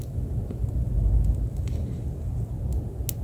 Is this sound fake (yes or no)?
no